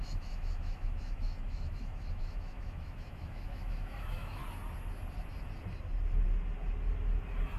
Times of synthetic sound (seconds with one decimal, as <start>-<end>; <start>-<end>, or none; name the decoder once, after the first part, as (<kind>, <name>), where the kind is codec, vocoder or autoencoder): 0.0-4.4 (autoencoder, DAC-VAE)